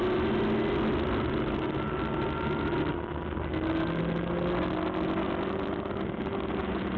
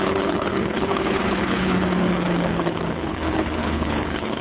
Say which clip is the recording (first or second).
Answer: first